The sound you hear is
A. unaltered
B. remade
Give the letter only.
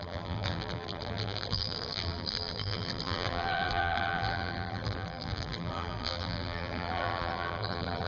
B